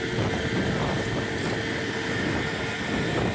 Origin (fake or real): real